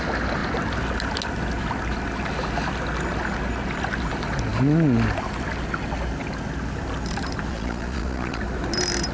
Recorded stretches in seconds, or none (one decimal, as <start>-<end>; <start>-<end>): 0.0-7.5; 8.4-9.1